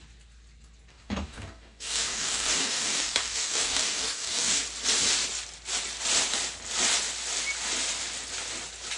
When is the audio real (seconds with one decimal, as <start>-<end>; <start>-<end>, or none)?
0.0-0.9; 4.6-9.0